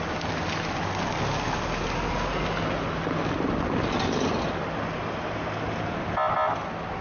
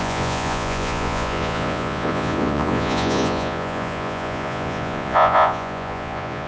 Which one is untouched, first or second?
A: first